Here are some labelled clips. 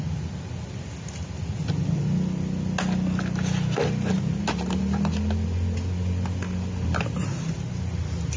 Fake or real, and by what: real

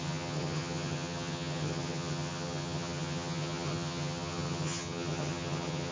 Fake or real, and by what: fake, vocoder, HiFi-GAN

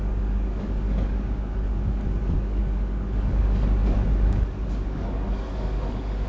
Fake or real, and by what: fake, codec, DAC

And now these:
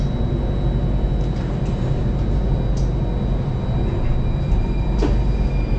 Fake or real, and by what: real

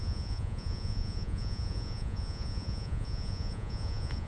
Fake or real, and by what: fake, vocoder, Vocos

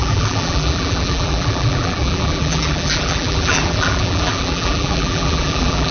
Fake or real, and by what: fake, vocoder, BigVGAN v2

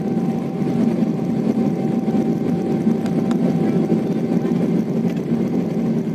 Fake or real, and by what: real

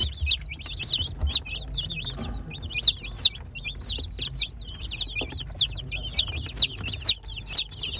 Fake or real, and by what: real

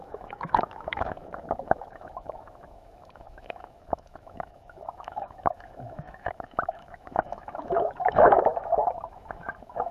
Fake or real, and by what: fake, autoencoder, DAC-VAE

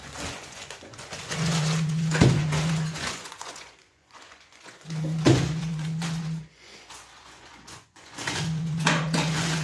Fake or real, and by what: fake, vocoder, Vocos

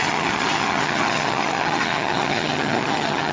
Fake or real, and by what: fake, vocoder, HiFi-GAN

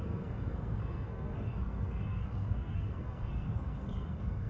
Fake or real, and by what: fake, codec, SNAC